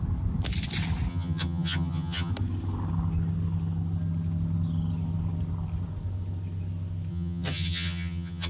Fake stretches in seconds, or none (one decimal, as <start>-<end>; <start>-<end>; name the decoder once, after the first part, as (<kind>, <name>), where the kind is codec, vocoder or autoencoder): 1.1-2.3 (vocoder, HiFi-GAN); 7.1-8.5